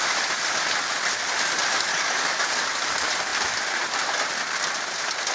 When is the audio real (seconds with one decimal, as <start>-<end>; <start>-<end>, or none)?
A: 0.0-1.9; 2.7-5.3